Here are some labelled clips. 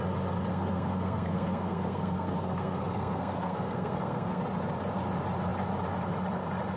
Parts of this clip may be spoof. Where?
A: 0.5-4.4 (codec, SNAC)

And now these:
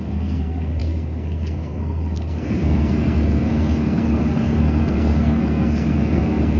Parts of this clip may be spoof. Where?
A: 0.0-6.6 (codec, SNAC)

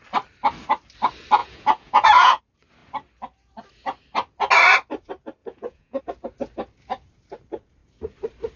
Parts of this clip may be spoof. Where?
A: 1.4-2.4 (vocoder, Vocos); 5.4-6.0

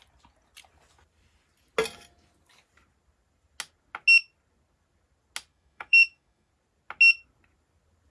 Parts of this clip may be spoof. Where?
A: 5.5-6.5 (autoencoder, DAC-VAE)

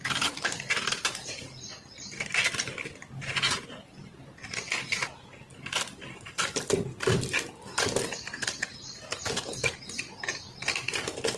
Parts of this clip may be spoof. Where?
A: none

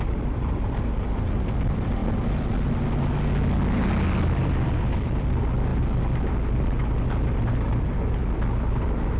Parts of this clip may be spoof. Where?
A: 0.0-2.0 (vocoder, BigVGAN v2); 4.2-5.7; 7.8-9.2

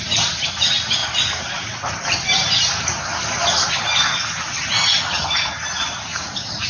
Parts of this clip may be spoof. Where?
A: 6.1-6.7 (vocoder, Vocos)